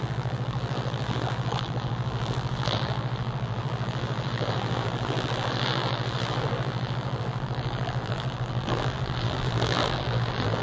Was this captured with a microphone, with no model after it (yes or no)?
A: no